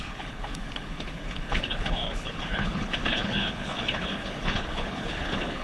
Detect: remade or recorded remade